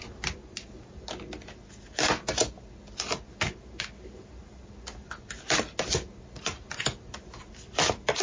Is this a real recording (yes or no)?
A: yes